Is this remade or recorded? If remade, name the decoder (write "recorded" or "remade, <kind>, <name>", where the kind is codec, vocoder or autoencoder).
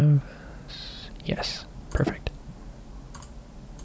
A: remade, vocoder, BigVGAN v2